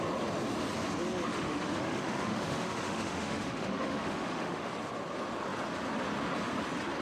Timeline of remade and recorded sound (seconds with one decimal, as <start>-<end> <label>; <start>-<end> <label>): 0.0-1.3 recorded; 1.3-4.7 remade; 4.7-7.0 recorded